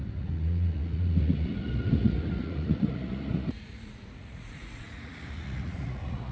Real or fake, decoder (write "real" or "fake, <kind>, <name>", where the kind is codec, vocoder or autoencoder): fake, vocoder, Vocos